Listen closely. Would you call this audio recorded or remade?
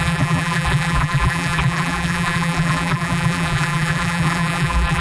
remade